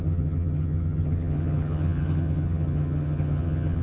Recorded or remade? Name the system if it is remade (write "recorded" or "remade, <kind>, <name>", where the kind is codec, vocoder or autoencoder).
remade, vocoder, HiFi-GAN